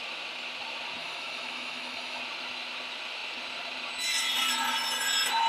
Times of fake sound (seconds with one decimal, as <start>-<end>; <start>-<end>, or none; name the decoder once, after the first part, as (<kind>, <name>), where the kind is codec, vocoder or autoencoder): 1.0-2.2 (autoencoder, DAC-VAE)